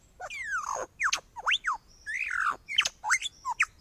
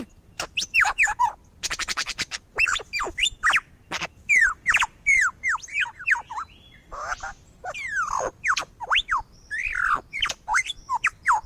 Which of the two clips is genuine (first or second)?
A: first